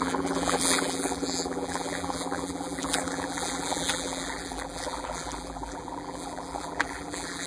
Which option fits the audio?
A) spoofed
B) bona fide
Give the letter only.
A